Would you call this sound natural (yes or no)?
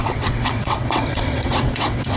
no